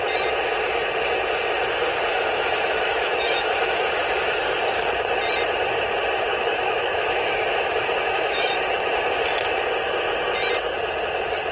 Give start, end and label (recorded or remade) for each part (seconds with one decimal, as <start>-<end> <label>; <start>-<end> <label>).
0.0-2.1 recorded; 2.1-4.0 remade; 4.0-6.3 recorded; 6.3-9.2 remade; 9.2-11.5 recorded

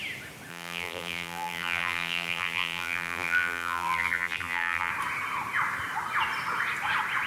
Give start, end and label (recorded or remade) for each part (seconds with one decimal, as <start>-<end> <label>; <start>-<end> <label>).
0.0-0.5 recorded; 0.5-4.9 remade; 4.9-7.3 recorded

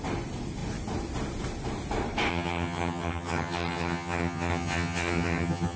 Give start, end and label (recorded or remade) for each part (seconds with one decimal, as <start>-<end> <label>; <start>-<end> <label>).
0.0-2.3 recorded; 2.3-5.8 remade

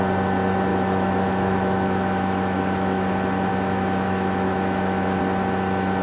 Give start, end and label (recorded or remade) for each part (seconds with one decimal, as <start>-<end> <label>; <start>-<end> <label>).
0.0-0.7 recorded; 0.7-3.1 remade; 3.1-3.5 recorded; 3.5-5.2 remade; 5.2-6.0 recorded

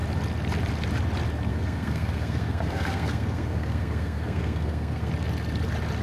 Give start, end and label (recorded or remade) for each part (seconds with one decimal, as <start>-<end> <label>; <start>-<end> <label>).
0.0-1.5 recorded; 1.5-5.1 remade; 5.1-6.0 recorded

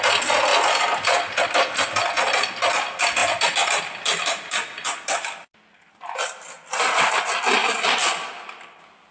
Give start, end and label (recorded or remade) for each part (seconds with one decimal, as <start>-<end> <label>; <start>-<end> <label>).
0.0-9.1 recorded

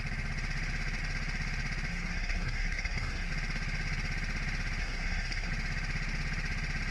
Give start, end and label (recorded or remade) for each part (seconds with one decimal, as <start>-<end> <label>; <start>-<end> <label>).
0.0-1.9 recorded; 1.9-3.3 remade; 3.3-4.8 recorded; 4.8-5.5 remade; 5.5-6.9 recorded

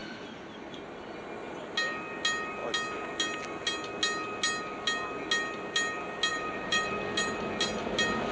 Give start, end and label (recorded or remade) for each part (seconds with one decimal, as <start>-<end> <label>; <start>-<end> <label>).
0.0-0.6 remade; 0.6-6.3 recorded; 6.3-6.9 remade; 6.9-8.3 recorded